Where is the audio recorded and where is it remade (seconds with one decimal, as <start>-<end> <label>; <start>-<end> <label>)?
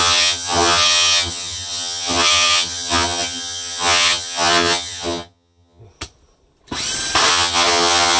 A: 0.0-5.8 remade; 5.8-7.3 recorded; 7.3-8.2 remade